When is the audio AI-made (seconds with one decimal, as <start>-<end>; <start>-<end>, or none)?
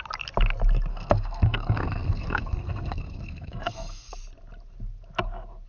0.9-4.2